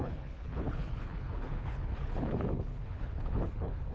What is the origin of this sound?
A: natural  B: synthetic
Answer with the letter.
B